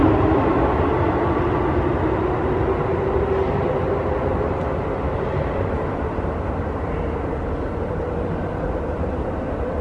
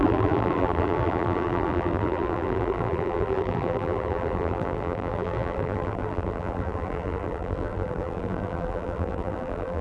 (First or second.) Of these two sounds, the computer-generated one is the second